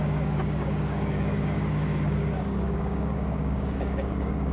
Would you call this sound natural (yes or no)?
no